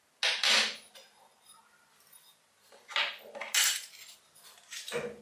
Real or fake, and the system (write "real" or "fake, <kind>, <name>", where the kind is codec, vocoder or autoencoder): real